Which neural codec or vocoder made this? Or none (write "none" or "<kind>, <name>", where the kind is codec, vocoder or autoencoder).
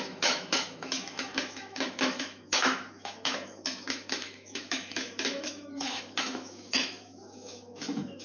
autoencoder, DAC-VAE